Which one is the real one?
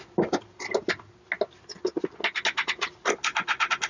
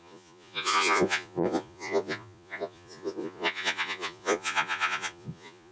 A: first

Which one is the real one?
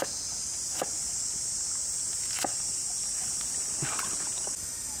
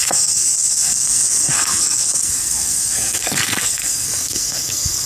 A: first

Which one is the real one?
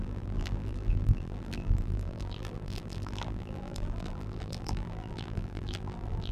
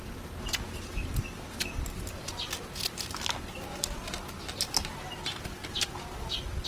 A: second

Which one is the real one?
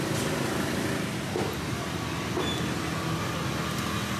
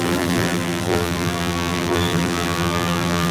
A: first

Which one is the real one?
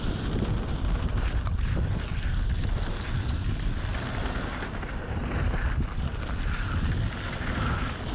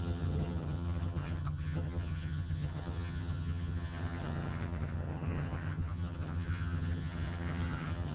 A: first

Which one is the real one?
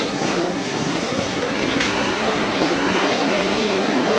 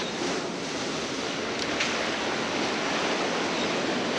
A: second